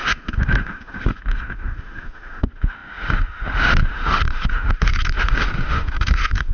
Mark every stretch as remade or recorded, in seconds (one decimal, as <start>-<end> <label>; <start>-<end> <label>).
0.0-6.5 remade